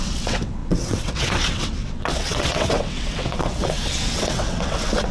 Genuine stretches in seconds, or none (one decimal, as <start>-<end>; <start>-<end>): none